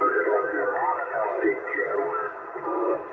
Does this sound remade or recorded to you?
recorded